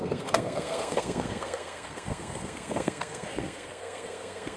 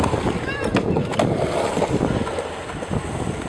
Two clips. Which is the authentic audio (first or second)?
second